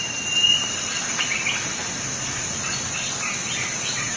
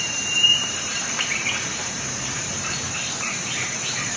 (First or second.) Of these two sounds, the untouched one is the first